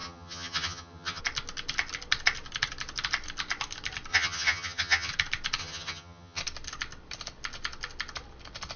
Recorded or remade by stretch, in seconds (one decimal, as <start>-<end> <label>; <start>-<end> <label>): 0.0-1.2 remade; 1.2-4.1 recorded; 4.1-5.1 remade; 5.1-5.6 recorded; 5.6-6.4 remade; 6.4-8.8 recorded